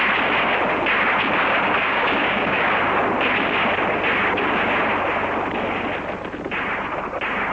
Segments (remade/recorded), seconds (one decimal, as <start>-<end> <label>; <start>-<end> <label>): 0.0-1.8 recorded; 1.8-2.6 remade; 2.6-7.5 recorded